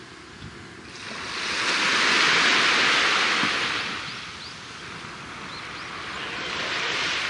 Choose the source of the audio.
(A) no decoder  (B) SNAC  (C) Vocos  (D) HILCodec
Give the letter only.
A